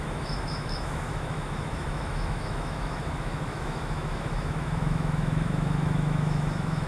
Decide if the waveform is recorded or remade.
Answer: remade